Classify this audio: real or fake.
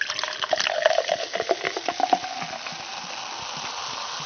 real